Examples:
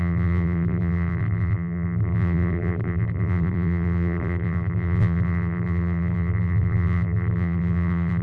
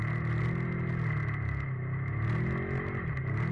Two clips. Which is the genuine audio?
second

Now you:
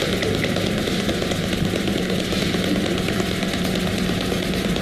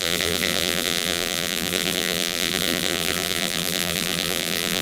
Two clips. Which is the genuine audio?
first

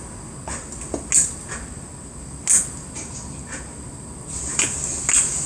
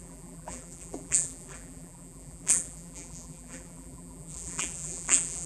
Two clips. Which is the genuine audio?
first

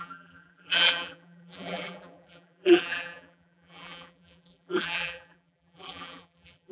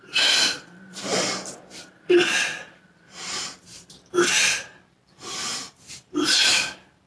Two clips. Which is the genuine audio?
second